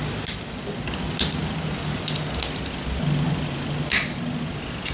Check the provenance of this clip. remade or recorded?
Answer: recorded